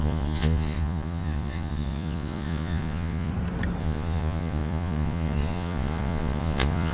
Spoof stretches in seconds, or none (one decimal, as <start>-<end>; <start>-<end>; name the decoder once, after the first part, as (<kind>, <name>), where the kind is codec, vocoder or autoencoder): 0.0-3.3 (vocoder, Vocos); 3.8-6.9